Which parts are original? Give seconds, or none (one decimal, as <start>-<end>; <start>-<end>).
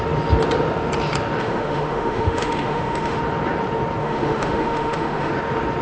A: 0.0-1.4; 3.2-4.0; 5.3-5.8